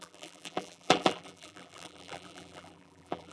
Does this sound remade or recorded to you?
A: remade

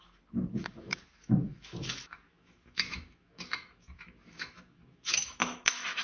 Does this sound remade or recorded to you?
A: remade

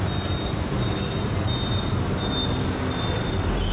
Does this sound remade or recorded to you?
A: recorded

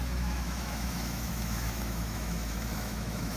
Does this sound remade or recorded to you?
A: remade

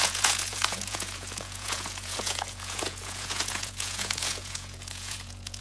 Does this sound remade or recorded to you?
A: remade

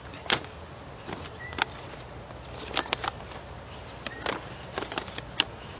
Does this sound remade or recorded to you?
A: recorded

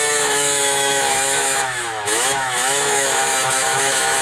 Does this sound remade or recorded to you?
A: remade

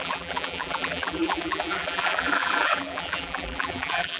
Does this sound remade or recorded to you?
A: remade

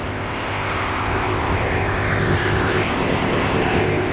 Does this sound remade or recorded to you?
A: remade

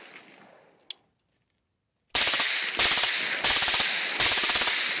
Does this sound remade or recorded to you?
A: recorded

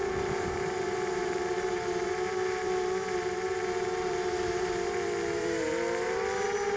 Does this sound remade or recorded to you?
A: remade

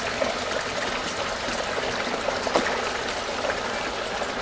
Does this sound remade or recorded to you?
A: recorded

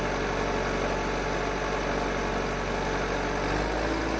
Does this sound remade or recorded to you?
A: recorded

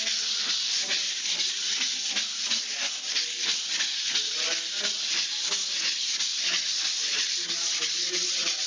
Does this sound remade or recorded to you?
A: recorded